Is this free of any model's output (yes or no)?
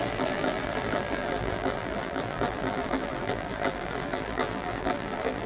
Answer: no